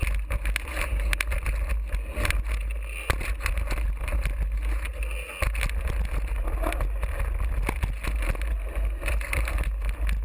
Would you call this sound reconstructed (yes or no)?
no